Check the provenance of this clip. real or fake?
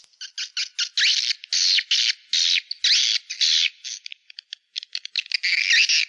real